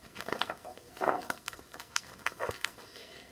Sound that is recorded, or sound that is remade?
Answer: remade